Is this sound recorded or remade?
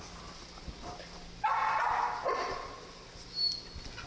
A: recorded